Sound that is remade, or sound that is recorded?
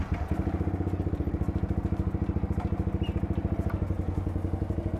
recorded